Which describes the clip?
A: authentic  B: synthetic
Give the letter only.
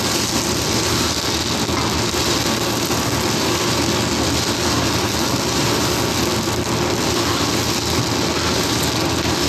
A